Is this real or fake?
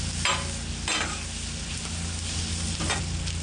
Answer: real